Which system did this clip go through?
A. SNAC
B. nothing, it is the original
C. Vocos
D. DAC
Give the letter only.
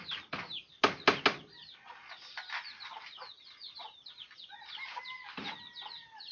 B